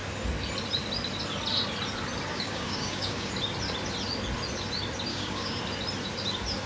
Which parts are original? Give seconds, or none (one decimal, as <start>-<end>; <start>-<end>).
0.0-2.3; 3.3-5.1; 5.6-6.7